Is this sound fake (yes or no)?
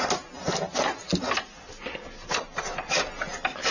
no